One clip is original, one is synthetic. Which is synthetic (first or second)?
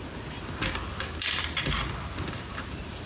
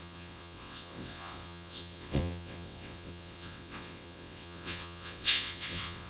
second